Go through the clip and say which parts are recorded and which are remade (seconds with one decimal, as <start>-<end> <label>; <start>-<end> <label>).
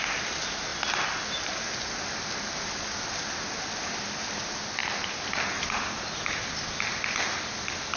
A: 0.0-4.8 recorded; 4.8-5.8 remade; 5.8-8.0 recorded